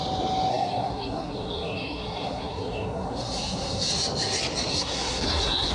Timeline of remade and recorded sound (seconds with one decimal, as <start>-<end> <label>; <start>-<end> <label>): 0.0-0.5 recorded; 0.5-3.9 remade; 3.9-4.7 recorded; 4.7-5.7 remade

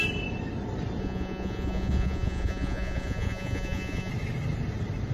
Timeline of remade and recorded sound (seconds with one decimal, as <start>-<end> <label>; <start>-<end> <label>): 0.0-1.0 recorded; 1.0-4.1 remade; 4.1-5.1 recorded

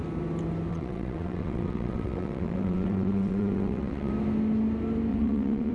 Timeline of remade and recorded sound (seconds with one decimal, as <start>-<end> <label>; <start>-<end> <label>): 0.0-0.7 recorded; 0.7-4.1 remade; 4.1-5.1 recorded; 5.1-5.7 remade

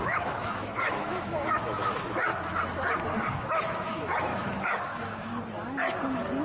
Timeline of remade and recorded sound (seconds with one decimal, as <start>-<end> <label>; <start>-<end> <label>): 0.0-2.3 remade; 2.3-3.3 recorded; 3.3-5.3 remade; 5.3-6.4 recorded